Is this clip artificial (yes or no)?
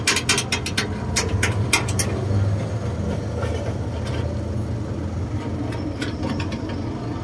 no